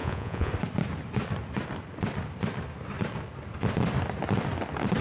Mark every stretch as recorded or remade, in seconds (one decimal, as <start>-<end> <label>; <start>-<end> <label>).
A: 0.0-0.5 remade; 0.5-5.0 recorded

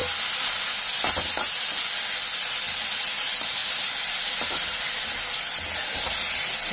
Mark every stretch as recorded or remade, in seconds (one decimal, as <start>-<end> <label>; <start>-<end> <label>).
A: 0.0-6.7 recorded